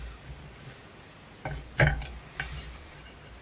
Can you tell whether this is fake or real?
real